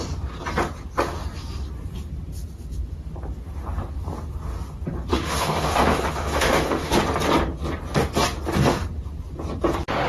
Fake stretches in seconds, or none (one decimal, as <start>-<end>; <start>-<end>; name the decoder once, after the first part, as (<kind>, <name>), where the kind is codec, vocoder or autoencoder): 5.1-7.0 (autoencoder, DAC-VAE)